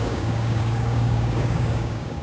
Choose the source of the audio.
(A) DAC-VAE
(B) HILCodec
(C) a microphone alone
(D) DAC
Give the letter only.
D